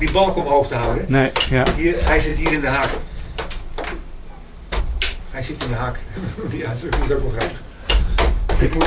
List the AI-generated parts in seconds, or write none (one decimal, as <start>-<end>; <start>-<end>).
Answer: 0.4-1.3